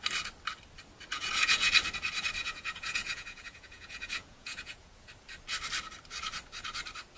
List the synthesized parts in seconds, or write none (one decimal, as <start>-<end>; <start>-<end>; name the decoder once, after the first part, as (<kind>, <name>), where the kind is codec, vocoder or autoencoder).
1.1-1.7 (vocoder, Vocos); 2.4-5.1